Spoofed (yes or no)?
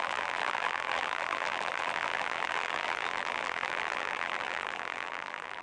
yes